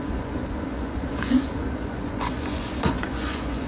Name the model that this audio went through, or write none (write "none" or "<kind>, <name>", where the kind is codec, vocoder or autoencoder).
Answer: vocoder, Vocos